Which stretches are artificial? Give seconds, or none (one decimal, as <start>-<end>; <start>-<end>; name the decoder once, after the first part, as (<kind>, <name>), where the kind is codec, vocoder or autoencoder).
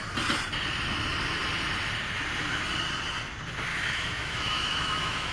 3.7-5.3 (autoencoder, DAC-VAE)